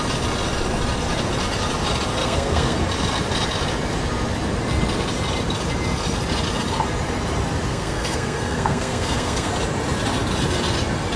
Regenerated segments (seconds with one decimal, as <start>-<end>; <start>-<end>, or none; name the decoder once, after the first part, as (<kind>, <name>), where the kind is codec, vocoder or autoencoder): 2.2-2.8 (codec, SNAC); 7.7-9.5